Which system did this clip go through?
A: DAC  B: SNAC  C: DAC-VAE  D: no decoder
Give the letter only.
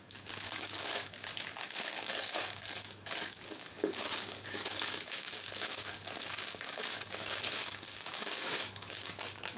A